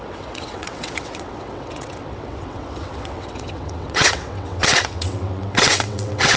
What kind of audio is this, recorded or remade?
remade